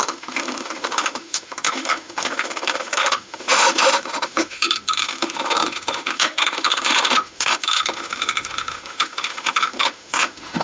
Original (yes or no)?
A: no